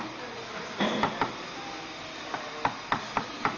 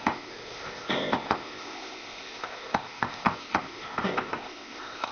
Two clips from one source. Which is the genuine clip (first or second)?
first